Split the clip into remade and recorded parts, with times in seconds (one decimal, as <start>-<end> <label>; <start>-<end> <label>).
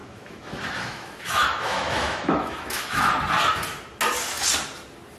0.0-3.1 remade; 3.1-5.2 recorded